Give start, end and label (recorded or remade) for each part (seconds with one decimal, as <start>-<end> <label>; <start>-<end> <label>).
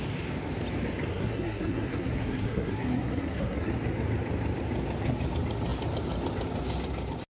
0.0-1.1 recorded; 1.1-3.7 remade; 3.7-7.3 recorded